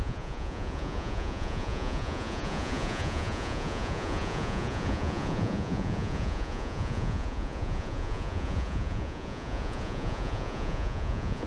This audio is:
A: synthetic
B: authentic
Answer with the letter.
A